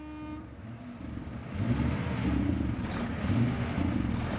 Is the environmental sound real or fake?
real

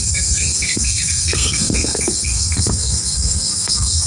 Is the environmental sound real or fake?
fake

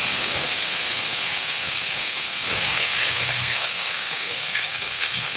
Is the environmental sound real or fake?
fake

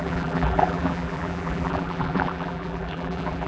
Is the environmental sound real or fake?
fake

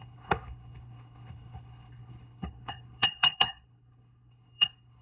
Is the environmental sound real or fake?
fake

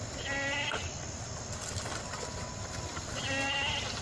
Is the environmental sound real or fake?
real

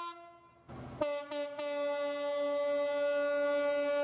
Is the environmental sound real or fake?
real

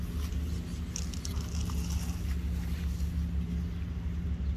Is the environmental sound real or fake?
real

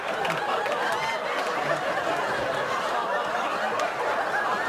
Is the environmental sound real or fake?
real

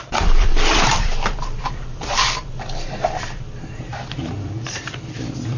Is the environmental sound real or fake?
fake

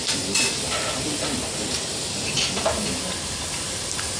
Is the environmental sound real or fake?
real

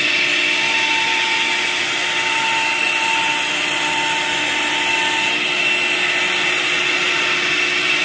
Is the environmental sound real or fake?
real